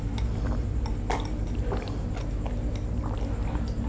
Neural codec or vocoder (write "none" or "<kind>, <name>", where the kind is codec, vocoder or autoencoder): none